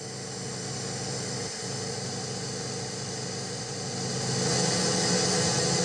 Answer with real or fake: real